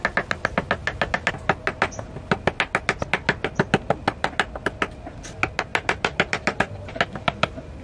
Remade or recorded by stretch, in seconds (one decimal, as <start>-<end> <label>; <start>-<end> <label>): 0.0-7.8 recorded